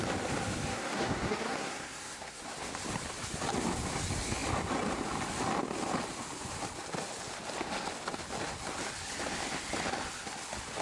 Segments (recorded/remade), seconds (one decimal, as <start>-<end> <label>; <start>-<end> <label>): 0.0-0.7 recorded; 0.7-2.4 remade; 2.4-10.8 recorded